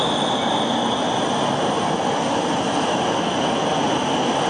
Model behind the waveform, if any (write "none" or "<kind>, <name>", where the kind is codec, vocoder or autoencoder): none